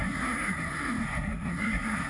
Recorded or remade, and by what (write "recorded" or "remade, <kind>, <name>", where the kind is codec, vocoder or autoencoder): remade, codec, SNAC